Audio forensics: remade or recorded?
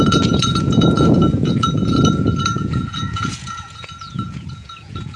remade